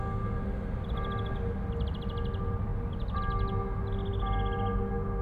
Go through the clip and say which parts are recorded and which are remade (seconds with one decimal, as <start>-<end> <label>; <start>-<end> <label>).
0.0-5.2 recorded